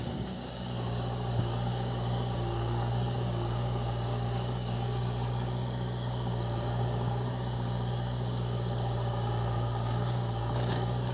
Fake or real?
fake